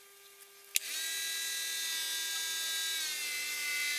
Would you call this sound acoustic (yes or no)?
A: yes